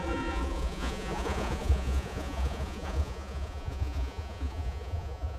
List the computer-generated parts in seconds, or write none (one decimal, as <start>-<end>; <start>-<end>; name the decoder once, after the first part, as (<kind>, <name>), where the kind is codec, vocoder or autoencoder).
0.0-5.4 (vocoder, Vocos)